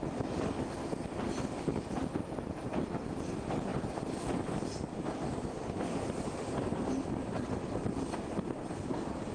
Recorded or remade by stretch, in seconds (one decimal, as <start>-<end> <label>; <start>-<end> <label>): 0.0-9.3 recorded